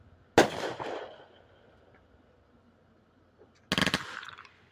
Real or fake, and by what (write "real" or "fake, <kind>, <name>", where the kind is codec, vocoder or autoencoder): real